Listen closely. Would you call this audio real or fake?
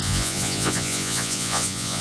fake